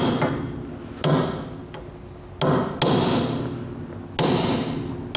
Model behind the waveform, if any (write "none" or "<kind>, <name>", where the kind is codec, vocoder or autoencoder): none